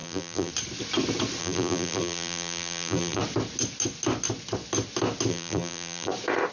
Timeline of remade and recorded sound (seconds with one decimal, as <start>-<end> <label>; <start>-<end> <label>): 0.0-0.5 remade; 0.5-1.4 recorded; 1.4-3.2 remade; 3.2-5.3 recorded; 5.3-6.1 remade; 6.1-6.5 recorded